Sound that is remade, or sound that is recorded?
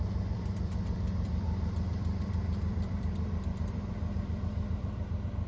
remade